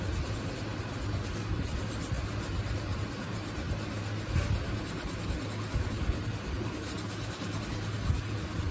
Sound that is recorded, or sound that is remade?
recorded